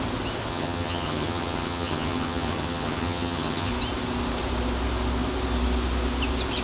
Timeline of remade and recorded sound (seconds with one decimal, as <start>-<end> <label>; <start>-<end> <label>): 0.0-0.5 recorded; 0.5-3.7 remade; 3.7-6.6 recorded